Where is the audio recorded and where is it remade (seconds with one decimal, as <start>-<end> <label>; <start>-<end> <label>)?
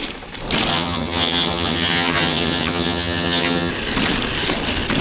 0.0-0.7 recorded; 0.7-3.7 remade; 3.7-5.0 recorded